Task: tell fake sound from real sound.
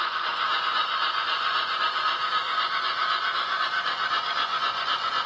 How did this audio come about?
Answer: fake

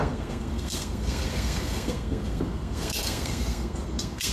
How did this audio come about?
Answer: fake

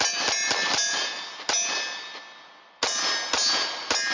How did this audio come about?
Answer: real